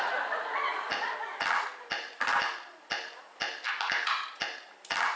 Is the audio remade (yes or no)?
no